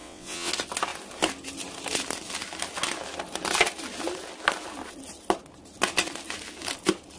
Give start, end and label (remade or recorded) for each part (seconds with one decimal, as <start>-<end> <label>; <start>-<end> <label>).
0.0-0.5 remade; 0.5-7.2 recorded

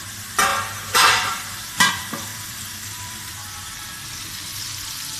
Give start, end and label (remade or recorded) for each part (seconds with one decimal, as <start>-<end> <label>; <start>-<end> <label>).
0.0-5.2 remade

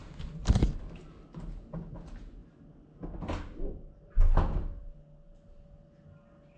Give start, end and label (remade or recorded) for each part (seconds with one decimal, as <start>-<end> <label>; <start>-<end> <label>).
0.0-6.6 recorded